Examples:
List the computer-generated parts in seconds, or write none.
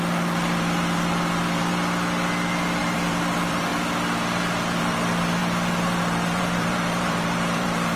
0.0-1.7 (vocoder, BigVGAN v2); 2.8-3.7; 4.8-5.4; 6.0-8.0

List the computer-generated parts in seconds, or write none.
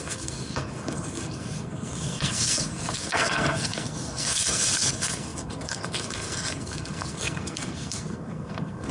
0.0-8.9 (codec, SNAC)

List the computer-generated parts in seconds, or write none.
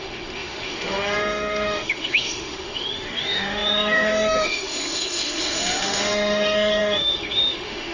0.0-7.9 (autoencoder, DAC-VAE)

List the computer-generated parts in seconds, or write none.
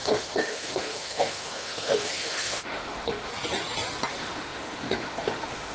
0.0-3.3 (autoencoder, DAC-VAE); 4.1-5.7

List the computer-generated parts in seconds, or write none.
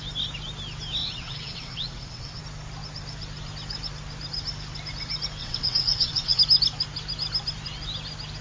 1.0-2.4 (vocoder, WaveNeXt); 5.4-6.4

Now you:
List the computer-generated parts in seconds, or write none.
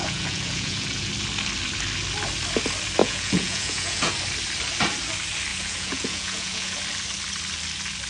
0.0-1.1 (vocoder, Vocos); 3.0-4.1; 5.5-6.8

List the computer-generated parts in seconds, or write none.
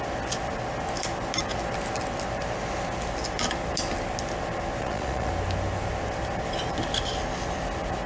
4.8-5.3 (vocoder, Vocos)